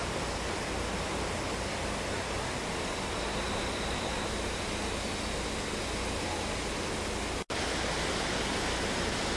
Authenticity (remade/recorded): recorded